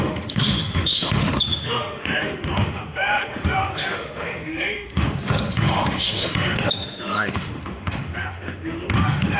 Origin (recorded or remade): remade